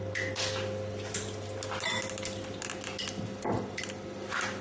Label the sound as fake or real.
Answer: real